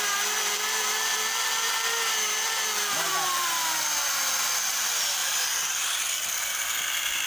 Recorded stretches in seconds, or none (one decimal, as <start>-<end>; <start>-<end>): 5.2-6.8